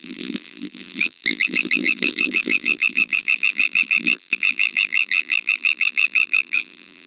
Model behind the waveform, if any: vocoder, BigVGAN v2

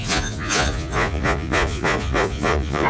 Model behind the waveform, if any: vocoder, Vocos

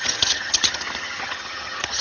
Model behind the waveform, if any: vocoder, HiFi-GAN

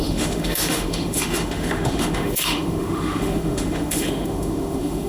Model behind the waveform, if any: autoencoder, DAC-VAE